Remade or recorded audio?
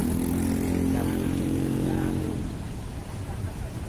recorded